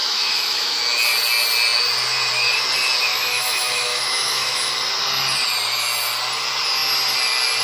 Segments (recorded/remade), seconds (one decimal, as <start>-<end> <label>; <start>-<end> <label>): 0.0-0.8 remade; 0.8-3.1 recorded; 3.1-4.7 remade; 4.7-7.6 recorded